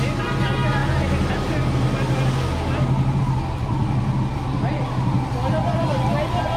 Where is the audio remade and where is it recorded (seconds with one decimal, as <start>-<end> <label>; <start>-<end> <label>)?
0.0-6.6 recorded